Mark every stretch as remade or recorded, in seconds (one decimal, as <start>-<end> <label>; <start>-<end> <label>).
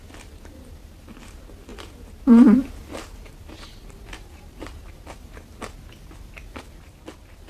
0.0-1.7 recorded; 1.7-5.7 remade; 5.7-7.5 recorded